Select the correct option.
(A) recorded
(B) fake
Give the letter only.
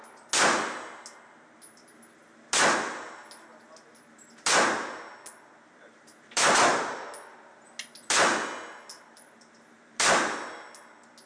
A